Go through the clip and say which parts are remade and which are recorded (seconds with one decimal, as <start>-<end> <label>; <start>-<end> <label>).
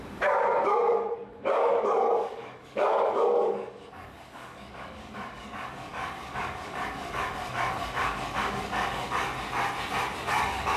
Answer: 0.0-9.3 remade; 9.3-10.2 recorded; 10.2-10.8 remade